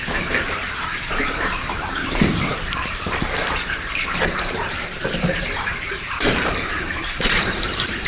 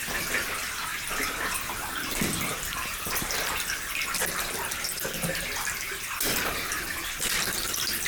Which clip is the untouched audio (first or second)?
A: second